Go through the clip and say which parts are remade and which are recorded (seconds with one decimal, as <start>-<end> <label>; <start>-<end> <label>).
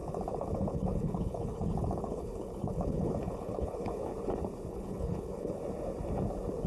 0.0-4.1 remade; 4.1-4.7 recorded; 4.7-5.6 remade; 5.6-6.7 recorded